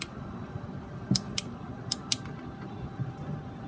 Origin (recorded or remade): recorded